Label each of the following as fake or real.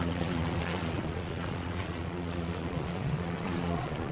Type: fake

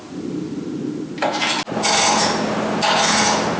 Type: real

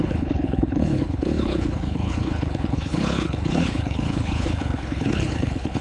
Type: fake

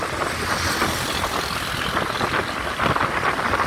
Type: real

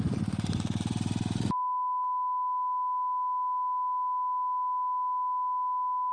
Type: real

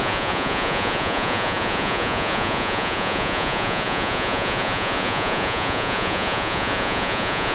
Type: fake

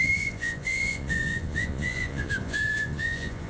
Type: fake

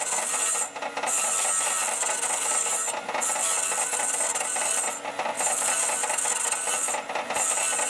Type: real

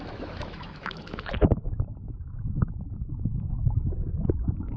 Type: fake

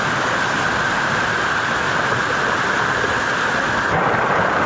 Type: real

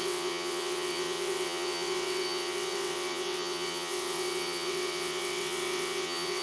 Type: fake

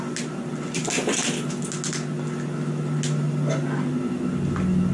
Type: real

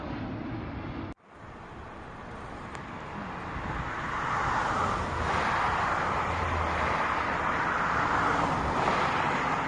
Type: real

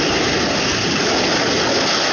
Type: real